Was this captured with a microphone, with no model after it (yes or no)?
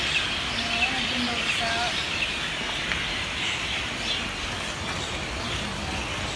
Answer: yes